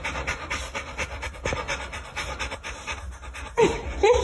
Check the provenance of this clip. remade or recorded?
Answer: remade